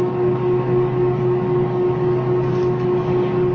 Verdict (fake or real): fake